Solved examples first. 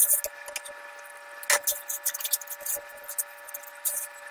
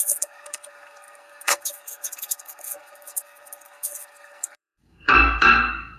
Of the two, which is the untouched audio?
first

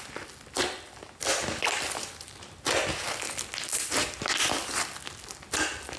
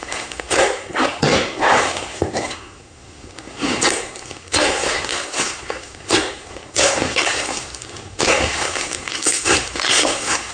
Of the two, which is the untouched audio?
first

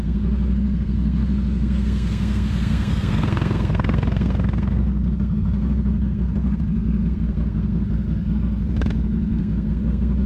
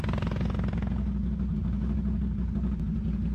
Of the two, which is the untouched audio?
second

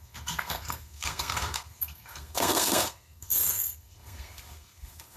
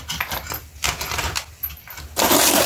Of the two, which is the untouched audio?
second